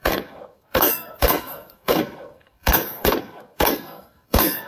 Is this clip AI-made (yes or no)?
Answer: yes